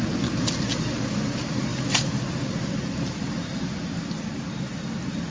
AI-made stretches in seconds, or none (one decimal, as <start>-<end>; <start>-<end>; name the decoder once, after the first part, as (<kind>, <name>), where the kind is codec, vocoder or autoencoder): 1.7-5.3 (vocoder, BigVGAN v2)